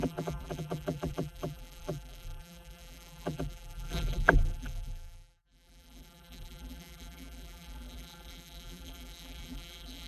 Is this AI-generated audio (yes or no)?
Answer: yes